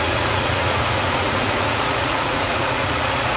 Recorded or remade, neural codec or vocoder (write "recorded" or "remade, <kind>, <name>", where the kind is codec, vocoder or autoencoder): remade, vocoder, Vocos